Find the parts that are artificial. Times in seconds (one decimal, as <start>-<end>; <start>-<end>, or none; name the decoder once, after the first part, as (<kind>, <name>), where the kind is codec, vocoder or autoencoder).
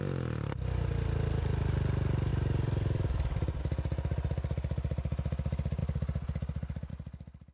2.3-3.6 (vocoder, BigVGAN v2); 5.8-6.9